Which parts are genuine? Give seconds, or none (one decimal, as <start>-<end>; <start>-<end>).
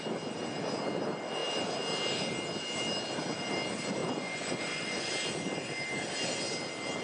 0.0-4.0; 5.1-7.0